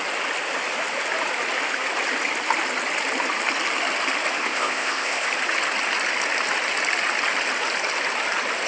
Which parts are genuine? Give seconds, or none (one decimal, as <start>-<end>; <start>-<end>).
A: 0.0-4.4; 5.3-8.7